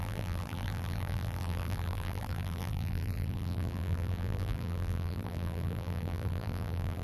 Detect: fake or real fake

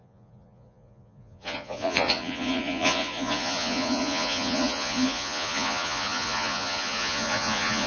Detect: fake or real fake